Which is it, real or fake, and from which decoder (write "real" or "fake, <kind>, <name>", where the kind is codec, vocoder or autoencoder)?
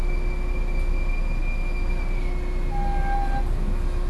real